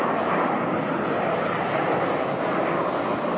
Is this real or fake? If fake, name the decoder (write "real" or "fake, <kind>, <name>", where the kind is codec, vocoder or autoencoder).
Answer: real